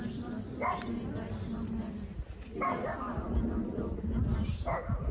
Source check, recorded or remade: recorded